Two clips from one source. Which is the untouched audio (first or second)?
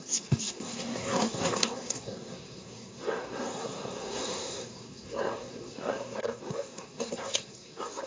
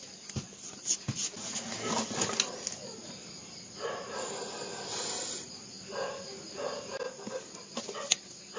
second